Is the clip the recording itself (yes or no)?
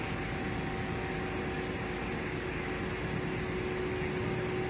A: yes